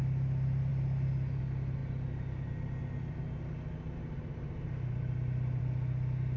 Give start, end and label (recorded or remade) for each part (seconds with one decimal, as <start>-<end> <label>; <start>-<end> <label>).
0.0-6.4 recorded